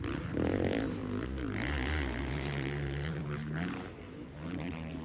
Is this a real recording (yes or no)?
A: no